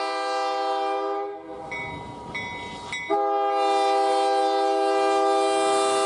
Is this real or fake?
real